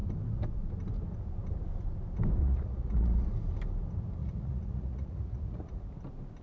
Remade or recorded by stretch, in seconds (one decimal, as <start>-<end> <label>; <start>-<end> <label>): 0.0-2.4 recorded; 2.4-3.3 remade; 3.3-4.2 recorded; 4.2-5.9 remade; 5.9-6.4 recorded